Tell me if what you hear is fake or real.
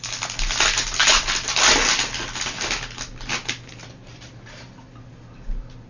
real